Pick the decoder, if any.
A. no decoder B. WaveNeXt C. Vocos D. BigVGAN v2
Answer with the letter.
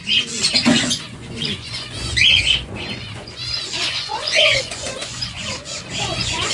C